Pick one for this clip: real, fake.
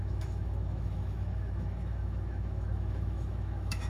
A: fake